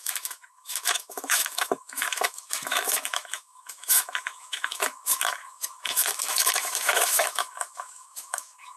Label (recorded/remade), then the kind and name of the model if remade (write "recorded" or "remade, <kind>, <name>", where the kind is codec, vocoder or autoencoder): remade, autoencoder, DAC-VAE